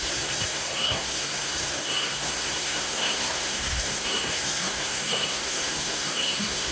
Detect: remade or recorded remade